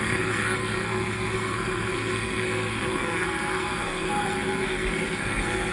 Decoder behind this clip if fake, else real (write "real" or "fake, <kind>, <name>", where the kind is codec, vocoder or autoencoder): fake, codec, SNAC